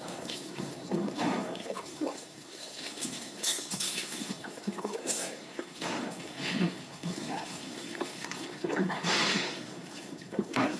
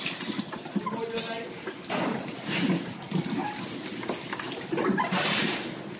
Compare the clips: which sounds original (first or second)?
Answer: second